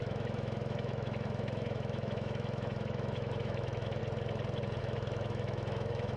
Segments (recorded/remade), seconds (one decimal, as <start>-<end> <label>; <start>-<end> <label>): 0.0-4.0 remade; 4.0-4.8 recorded; 4.8-6.2 remade